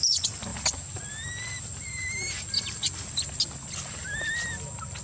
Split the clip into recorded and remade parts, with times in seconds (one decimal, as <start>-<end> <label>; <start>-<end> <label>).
0.0-5.0 recorded